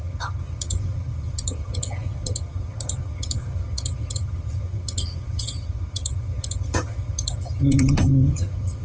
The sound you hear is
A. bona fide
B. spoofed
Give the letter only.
B